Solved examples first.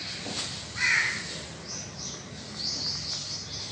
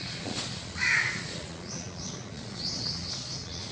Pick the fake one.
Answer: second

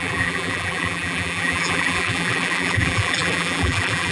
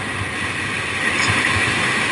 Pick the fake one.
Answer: first